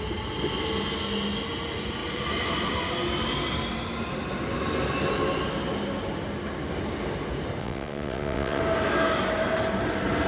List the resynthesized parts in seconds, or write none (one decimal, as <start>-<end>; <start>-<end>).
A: 7.6-8.6